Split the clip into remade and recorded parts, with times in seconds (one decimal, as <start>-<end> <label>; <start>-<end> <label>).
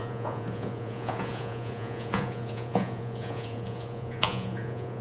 0.0-5.0 remade